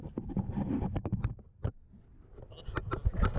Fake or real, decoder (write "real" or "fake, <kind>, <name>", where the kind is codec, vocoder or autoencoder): real